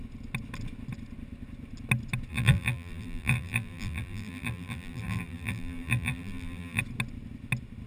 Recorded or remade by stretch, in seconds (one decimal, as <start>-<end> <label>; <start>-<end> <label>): 0.0-2.3 recorded; 2.3-6.8 remade; 6.8-7.9 recorded